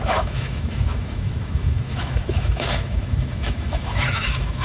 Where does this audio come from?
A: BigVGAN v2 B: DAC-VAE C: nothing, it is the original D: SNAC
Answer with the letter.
B